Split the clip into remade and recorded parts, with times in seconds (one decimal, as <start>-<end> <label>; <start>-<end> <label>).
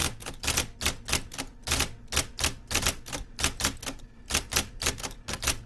0.0-1.5 recorded; 1.5-4.9 remade; 4.9-5.7 recorded